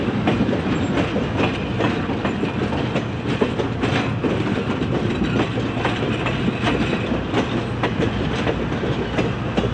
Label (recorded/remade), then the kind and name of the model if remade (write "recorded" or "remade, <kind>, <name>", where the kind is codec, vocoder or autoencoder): recorded